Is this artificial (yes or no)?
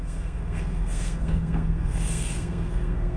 yes